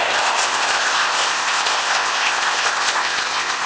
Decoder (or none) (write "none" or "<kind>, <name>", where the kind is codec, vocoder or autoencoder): codec, ZipCodec